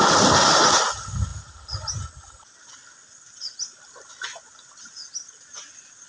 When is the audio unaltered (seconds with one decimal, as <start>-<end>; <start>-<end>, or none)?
0.0-6.1